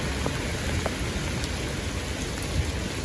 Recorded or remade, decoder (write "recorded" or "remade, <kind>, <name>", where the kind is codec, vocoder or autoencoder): recorded